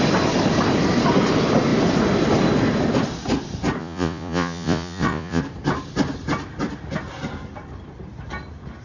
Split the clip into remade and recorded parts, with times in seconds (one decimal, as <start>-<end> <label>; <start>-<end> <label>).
0.0-3.8 recorded; 3.8-5.4 remade; 5.4-8.8 recorded

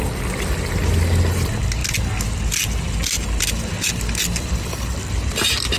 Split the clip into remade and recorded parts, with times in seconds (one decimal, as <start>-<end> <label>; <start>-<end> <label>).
0.0-5.8 recorded

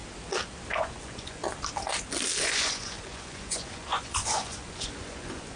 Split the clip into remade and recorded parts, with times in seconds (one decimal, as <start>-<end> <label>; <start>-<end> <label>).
0.0-0.7 recorded; 0.7-1.4 remade; 1.4-2.4 recorded; 2.4-5.6 remade